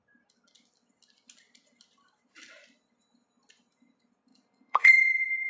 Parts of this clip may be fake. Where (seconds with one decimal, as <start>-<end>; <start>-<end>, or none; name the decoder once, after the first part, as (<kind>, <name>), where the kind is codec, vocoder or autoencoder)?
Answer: 4.3-5.5 (vocoder, Vocos)